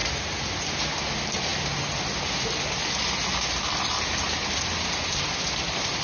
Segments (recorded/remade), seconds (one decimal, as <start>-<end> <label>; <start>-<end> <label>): 0.0-6.0 recorded